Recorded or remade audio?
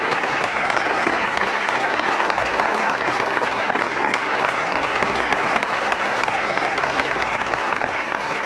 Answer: remade